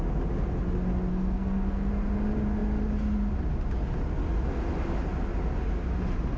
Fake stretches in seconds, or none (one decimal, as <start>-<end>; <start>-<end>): 1.1-1.9